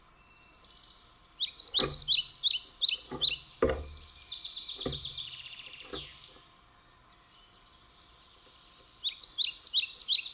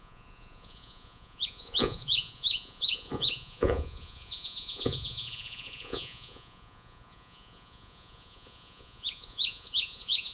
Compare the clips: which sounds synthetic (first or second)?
second